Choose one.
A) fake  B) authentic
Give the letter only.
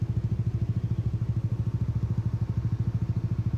B